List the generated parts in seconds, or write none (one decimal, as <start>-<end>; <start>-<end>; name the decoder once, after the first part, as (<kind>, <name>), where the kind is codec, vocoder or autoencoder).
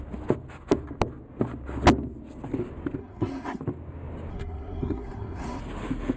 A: 3.0-3.6 (codec, SNAC); 4.3-5.6